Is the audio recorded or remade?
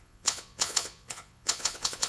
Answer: remade